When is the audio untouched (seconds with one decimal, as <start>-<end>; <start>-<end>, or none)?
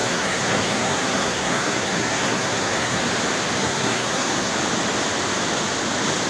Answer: 3.0-3.6; 4.5-6.3